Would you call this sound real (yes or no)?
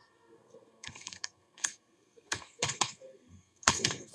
no